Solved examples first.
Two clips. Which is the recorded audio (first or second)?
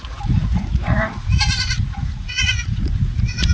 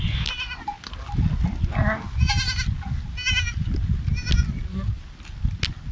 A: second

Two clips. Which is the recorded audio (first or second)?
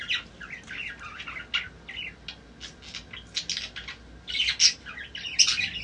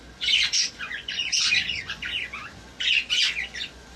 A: first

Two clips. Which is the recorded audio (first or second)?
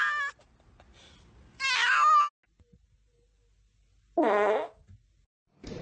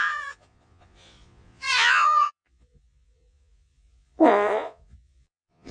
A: first